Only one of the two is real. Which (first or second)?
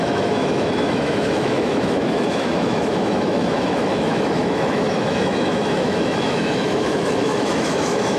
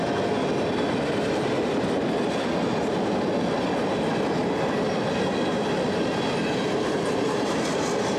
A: second